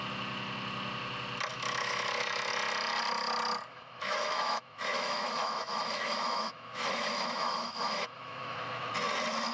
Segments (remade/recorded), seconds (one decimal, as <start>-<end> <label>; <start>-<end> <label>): 0.0-1.5 recorded; 1.5-2.5 remade; 2.5-3.7 recorded; 3.7-8.8 remade; 8.8-9.5 recorded